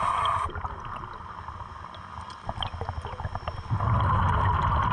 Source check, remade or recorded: recorded